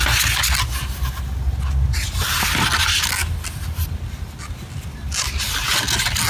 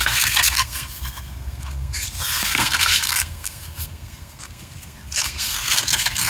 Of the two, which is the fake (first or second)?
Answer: second